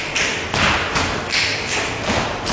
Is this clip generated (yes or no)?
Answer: no